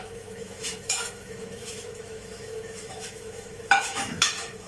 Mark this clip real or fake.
fake